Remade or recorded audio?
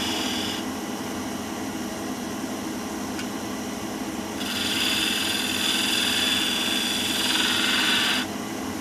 recorded